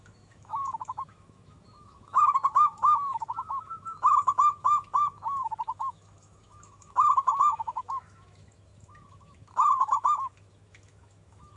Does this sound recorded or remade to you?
remade